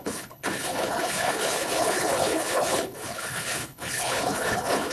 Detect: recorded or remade remade